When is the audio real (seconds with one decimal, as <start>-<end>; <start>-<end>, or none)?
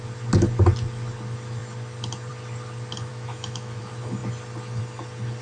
0.0-3.1; 3.8-5.4